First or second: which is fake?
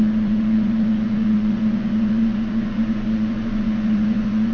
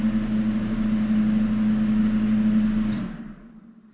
first